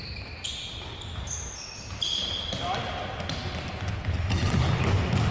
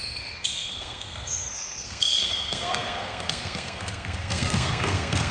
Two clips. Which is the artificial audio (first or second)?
second